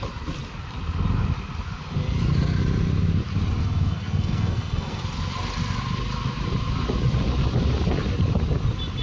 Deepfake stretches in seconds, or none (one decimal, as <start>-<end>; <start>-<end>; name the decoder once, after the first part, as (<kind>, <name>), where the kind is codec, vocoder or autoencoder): 3.6-5.0 (codec, SNAC)